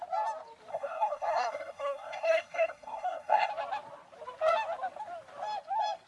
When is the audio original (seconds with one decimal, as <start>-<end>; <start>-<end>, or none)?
0.0-0.7; 3.5-6.1